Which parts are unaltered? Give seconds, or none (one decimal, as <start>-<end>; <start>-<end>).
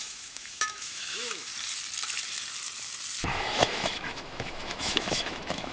1.5-3.2